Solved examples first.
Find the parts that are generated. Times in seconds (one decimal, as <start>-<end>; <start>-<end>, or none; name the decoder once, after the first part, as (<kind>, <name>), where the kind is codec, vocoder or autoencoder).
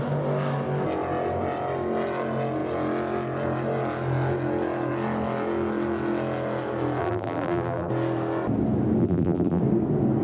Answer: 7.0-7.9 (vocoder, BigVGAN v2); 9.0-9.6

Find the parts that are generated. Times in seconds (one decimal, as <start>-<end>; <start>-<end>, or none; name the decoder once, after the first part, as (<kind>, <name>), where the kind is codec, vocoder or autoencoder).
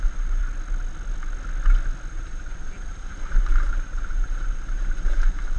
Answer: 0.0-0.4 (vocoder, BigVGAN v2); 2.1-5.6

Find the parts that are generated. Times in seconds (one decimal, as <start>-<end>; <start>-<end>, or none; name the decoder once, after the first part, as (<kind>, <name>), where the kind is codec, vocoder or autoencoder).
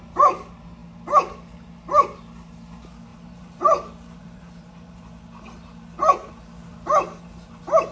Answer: 3.1-5.0 (vocoder, BigVGAN v2)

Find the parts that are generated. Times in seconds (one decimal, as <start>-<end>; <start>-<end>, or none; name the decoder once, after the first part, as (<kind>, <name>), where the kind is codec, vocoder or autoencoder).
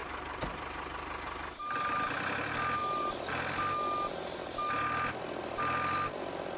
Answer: 0.0-1.9 (vocoder, BigVGAN v2); 2.8-3.3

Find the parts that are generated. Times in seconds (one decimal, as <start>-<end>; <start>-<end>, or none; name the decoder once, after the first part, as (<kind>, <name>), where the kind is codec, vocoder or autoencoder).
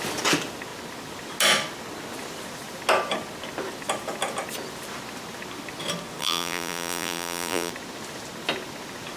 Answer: 6.2-7.7 (vocoder, BigVGAN v2)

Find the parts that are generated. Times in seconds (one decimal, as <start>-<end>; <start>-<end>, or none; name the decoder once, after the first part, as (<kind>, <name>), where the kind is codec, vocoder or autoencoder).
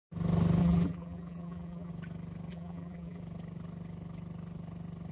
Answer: 0.6-1.9 (vocoder, BigVGAN v2); 2.5-3.2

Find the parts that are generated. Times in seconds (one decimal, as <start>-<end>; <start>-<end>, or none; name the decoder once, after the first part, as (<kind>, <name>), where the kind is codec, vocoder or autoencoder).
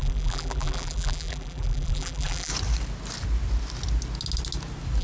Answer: 0.0-2.5 (vocoder, BigVGAN v2)